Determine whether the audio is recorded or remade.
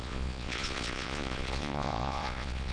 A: remade